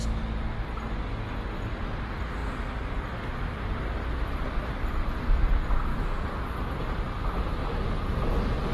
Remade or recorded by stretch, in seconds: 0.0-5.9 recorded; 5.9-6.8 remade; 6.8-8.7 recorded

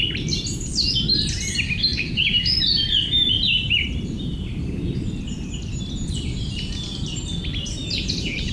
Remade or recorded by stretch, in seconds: 0.0-1.9 recorded; 1.9-4.9 remade; 4.9-7.8 recorded; 7.8-8.5 remade

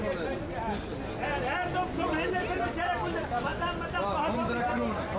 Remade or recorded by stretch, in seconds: 0.0-5.2 recorded

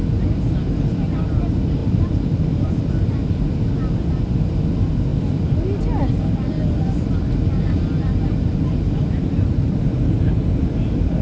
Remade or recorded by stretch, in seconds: 0.0-11.2 remade

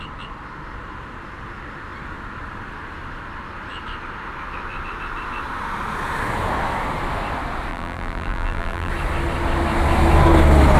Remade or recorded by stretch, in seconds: 0.0-7.7 recorded; 7.7-8.9 remade; 8.9-10.8 recorded

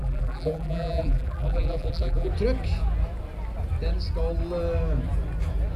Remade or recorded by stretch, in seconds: 0.0-2.3 remade; 2.3-5.8 recorded

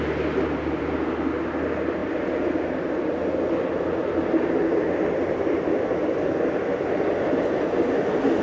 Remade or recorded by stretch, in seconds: 0.0-8.4 recorded

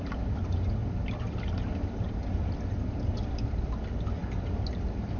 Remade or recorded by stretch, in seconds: 0.0-5.2 recorded